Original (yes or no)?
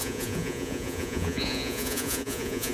no